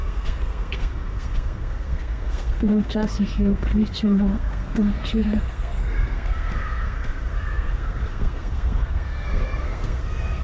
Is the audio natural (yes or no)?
no